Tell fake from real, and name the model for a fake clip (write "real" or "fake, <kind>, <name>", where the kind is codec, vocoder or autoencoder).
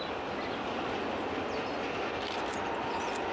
real